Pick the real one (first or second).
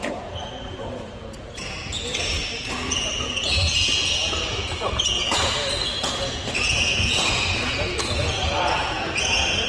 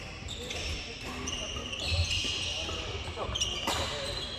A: second